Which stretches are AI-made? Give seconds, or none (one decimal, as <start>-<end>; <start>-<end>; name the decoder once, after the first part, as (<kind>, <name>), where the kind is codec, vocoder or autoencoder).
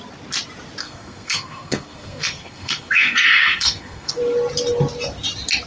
0.8-4.2 (codec, SNAC)